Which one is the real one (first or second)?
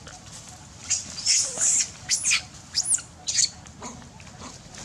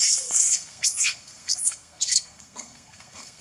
first